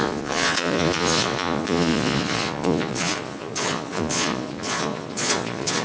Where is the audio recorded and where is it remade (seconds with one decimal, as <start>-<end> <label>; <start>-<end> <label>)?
0.0-5.8 remade